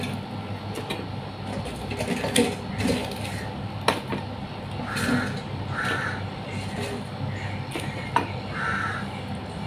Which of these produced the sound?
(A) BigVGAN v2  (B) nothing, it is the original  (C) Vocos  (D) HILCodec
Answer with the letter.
B